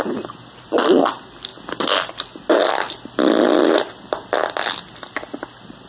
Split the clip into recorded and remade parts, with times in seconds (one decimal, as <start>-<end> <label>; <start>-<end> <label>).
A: 0.0-5.9 recorded